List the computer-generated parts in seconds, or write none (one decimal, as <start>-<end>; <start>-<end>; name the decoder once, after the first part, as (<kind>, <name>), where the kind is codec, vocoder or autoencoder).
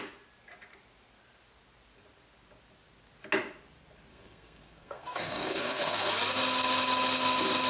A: 4.1-6.1 (codec, SNAC)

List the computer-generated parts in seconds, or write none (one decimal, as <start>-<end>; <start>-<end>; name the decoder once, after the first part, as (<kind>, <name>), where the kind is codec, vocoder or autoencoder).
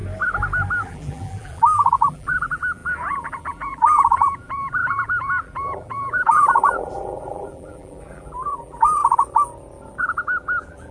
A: 0.7-9.0 (vocoder, BigVGAN v2); 10.0-10.9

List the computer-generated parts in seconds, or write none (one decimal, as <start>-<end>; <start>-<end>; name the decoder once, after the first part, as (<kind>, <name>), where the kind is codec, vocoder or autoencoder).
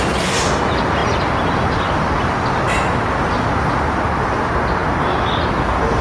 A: none